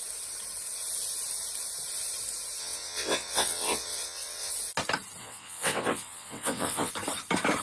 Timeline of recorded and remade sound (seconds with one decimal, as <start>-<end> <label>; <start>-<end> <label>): 0.0-2.6 recorded; 2.6-4.5 remade; 4.5-5.2 recorded; 5.2-6.9 remade; 6.9-7.6 recorded